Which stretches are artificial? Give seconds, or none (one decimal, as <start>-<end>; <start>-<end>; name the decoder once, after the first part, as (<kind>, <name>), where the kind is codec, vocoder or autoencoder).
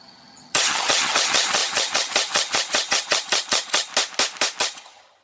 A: 0.0-3.9 (vocoder, HiFi-GAN); 4.6-5.2